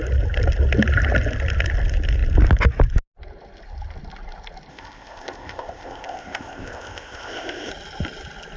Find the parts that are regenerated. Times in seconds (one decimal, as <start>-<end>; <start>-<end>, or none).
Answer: 4.7-7.7